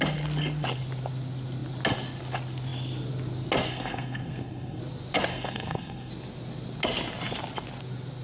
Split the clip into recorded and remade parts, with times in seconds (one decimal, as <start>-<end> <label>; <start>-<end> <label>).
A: 0.0-3.7 recorded; 3.7-4.8 remade; 4.8-5.3 recorded; 5.3-6.1 remade; 6.1-8.2 recorded